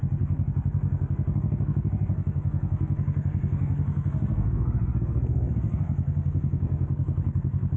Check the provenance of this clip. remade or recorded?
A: remade